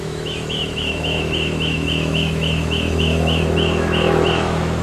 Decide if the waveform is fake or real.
fake